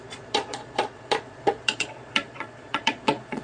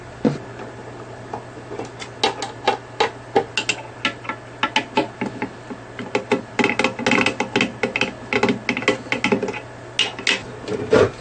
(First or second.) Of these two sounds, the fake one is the first